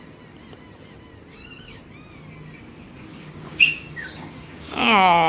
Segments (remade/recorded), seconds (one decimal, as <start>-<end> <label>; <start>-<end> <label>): 0.0-1.3 recorded; 1.3-1.8 remade; 1.8-3.1 recorded; 3.1-5.3 remade